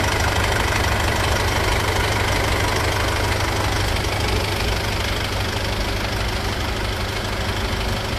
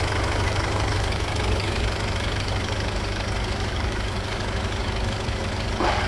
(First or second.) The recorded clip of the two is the first